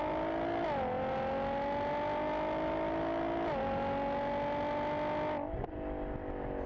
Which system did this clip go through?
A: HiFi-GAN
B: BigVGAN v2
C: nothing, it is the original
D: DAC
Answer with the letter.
C